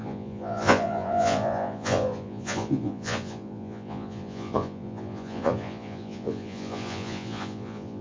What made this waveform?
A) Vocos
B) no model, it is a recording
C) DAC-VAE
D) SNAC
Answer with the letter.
A